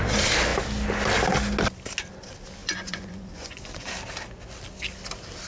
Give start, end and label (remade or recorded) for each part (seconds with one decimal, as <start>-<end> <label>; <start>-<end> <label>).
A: 0.0-2.6 recorded; 2.6-3.9 remade; 3.9-5.5 recorded